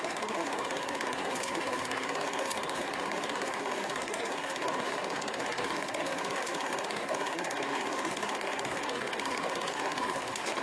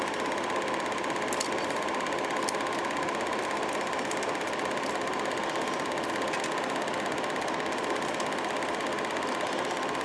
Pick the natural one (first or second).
second